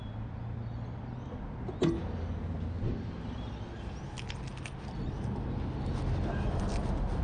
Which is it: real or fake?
real